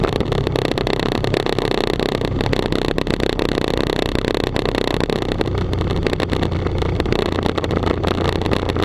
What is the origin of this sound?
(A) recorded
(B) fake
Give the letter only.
A